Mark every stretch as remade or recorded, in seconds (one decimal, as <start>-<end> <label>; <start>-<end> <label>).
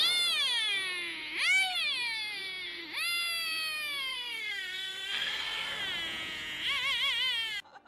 0.0-4.1 recorded; 4.1-5.8 remade; 5.8-7.9 recorded